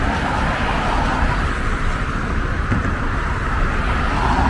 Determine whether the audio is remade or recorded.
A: recorded